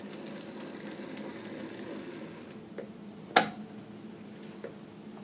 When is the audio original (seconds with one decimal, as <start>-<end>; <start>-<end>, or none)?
0.0-5.2

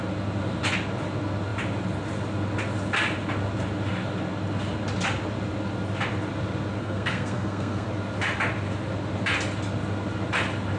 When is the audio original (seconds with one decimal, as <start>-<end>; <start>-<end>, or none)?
0.0-6.8; 7.9-10.8

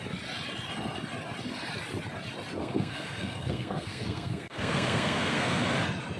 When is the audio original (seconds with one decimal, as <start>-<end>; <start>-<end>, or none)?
0.0-2.6; 5.6-6.2

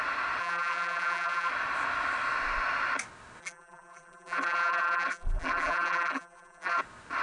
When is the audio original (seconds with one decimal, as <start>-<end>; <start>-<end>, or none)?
0.0-0.4; 1.5-3.4; 6.8-7.2

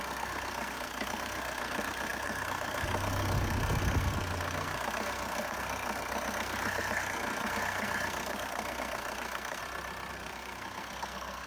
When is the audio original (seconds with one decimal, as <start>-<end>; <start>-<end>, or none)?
9.6-10.1

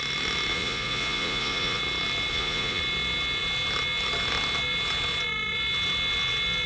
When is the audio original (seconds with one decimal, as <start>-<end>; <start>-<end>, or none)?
0.0-0.5; 1.8-2.3; 2.8-6.7